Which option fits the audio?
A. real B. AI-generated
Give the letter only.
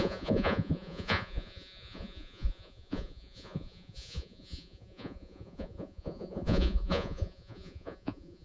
B